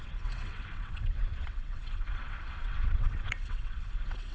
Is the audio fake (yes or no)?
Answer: yes